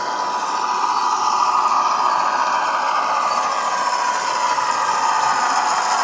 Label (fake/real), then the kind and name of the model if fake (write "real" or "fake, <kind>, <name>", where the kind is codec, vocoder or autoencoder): real